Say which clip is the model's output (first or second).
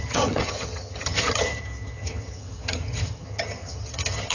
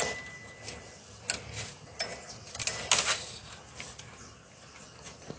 first